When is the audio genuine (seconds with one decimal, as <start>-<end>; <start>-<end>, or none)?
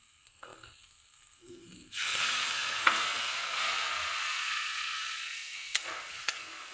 none